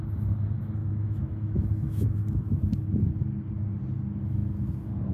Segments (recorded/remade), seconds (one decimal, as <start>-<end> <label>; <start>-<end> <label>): 0.0-0.8 recorded; 0.8-2.9 remade; 2.9-5.1 recorded